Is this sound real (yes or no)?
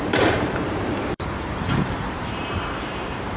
no